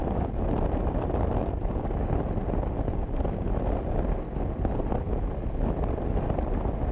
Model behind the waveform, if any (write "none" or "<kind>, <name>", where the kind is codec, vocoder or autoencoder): none